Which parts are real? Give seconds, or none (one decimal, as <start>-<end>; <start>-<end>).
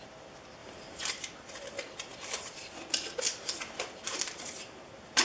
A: 0.0-5.2